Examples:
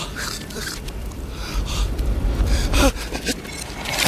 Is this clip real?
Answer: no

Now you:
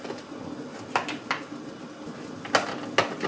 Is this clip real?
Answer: yes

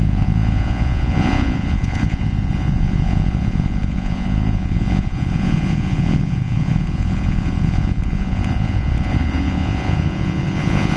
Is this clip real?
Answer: no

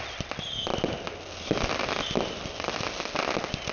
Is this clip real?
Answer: yes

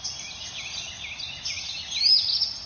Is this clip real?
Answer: yes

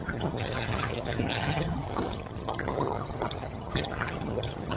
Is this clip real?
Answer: no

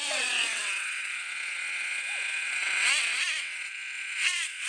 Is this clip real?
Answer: no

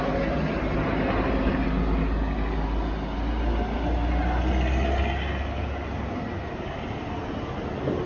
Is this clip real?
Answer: yes